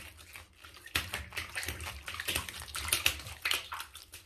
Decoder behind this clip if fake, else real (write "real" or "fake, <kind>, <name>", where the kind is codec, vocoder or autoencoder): real